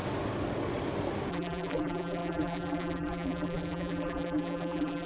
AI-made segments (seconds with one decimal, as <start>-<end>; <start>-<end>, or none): 1.3-5.1